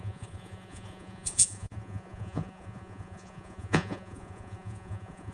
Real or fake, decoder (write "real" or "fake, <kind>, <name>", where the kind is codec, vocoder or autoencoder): fake, vocoder, Vocos